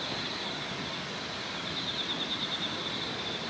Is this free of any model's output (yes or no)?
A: yes